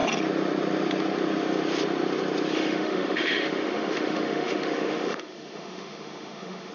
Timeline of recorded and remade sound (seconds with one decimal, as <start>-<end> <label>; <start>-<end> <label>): 0.0-2.5 recorded; 2.5-6.7 remade